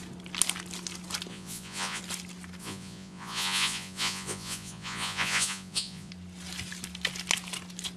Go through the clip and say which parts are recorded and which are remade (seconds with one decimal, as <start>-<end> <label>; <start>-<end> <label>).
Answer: 0.0-1.3 recorded; 1.3-2.0 remade; 2.0-2.6 recorded; 2.6-6.1 remade; 6.1-8.0 recorded

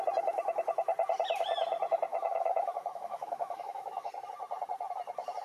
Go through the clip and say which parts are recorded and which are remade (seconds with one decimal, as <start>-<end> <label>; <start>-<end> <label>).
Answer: 0.0-2.1 recorded; 2.1-4.1 remade; 4.1-5.4 recorded

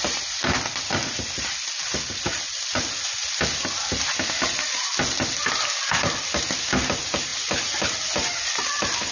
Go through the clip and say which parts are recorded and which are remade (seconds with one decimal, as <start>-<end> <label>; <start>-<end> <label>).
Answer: 0.0-9.1 recorded